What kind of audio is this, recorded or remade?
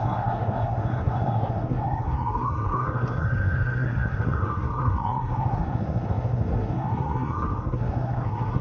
remade